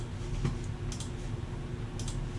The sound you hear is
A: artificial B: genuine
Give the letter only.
B